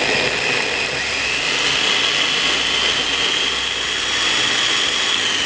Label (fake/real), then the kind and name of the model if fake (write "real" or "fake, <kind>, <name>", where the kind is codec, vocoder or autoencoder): real